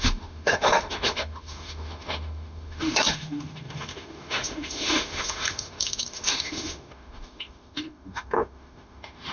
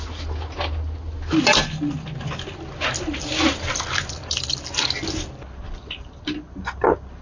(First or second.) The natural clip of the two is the second